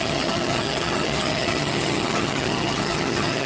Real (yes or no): no